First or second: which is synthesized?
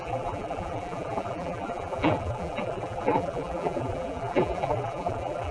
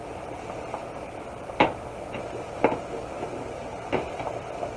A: first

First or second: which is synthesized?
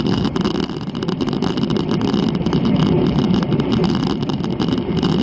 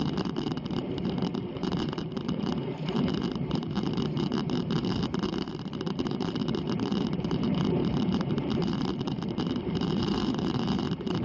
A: second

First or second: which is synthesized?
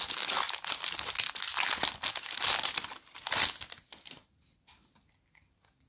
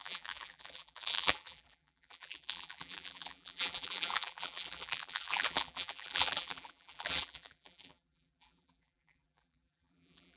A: second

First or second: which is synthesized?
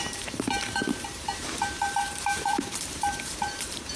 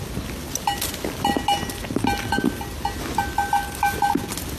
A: first